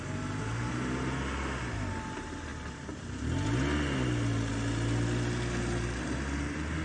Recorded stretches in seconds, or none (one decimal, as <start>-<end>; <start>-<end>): 0.0-6.8